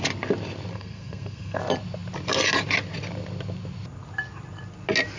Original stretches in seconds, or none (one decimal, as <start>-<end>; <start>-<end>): 0.0-0.7; 1.6-5.2